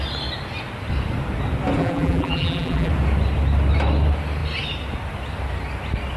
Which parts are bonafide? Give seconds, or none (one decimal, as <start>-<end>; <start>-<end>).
0.0-1.8; 2.9-6.2